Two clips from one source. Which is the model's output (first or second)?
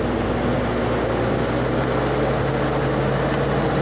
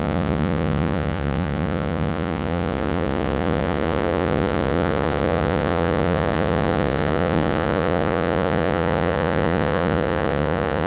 second